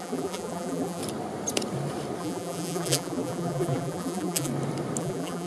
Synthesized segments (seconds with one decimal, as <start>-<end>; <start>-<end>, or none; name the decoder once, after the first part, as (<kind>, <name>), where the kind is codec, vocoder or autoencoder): 0.0-1.0 (vocoder, BigVGAN v2); 2.2-4.5; 5.0-5.5